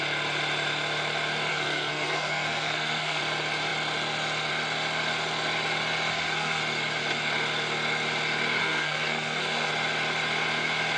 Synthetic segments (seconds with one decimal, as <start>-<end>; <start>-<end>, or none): 1.5-3.2; 6.1-6.6; 8.6-9.7